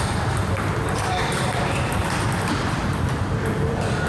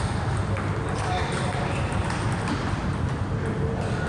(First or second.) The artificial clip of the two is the first